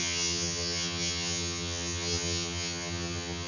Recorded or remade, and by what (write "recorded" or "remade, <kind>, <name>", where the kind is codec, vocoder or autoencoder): remade, vocoder, HiFi-GAN